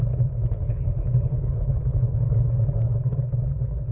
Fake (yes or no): yes